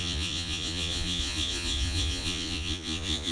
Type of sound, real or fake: fake